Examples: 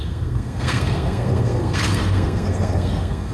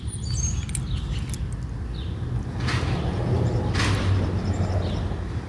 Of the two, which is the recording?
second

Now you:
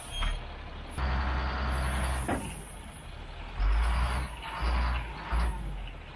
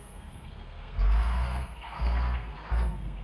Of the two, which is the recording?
first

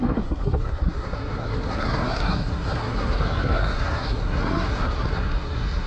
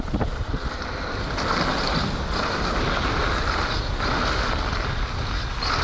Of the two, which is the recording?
second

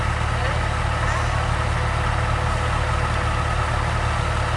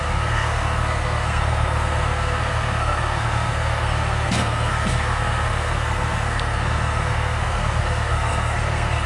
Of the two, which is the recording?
first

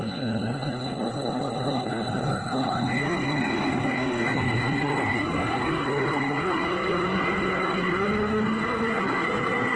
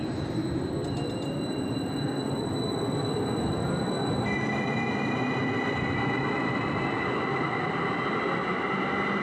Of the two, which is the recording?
second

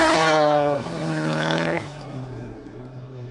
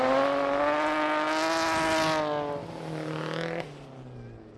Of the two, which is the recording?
second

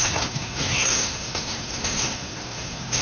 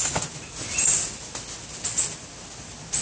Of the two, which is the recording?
second